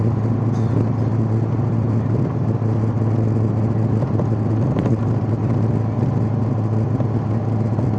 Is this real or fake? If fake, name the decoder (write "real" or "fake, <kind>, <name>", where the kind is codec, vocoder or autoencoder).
real